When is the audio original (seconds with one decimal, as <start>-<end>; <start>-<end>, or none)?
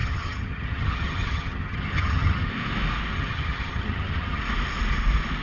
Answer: 2.5-3.1; 4.4-5.4